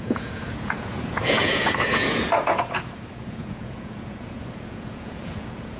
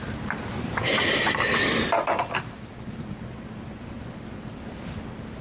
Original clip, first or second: second